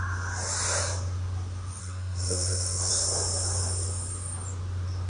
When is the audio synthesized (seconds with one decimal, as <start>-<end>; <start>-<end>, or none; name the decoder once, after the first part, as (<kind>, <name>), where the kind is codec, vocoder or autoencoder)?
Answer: 1.8-2.9 (codec, SNAC)